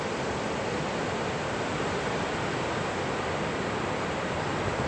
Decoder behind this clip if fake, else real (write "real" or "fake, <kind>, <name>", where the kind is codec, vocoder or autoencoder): fake, vocoder, BigVGAN v2